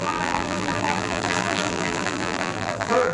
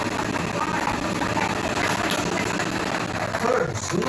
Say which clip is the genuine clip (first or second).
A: second